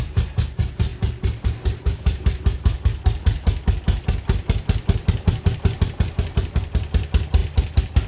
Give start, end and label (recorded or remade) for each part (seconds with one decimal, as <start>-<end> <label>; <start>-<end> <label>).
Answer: 0.0-8.1 recorded